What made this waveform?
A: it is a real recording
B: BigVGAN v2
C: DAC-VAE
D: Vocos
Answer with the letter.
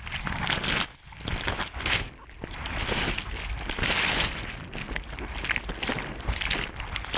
A